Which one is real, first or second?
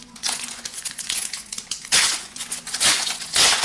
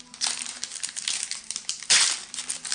second